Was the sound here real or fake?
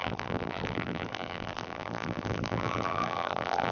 fake